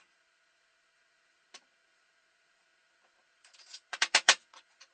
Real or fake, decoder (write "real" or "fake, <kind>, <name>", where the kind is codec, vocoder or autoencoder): fake, vocoder, Vocos